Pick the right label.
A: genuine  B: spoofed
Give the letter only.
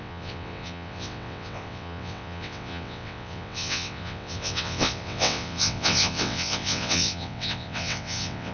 B